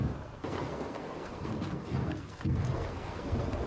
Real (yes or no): no